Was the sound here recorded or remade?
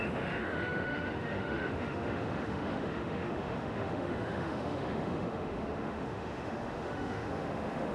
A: remade